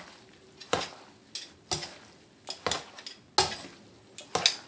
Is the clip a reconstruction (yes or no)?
no